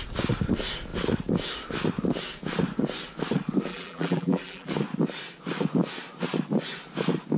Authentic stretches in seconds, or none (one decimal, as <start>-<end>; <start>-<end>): 0.0-3.7; 4.7-7.4